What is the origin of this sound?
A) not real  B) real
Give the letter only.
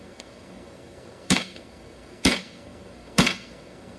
A